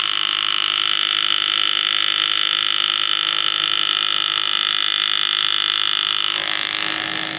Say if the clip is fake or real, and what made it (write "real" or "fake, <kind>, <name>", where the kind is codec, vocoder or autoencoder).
real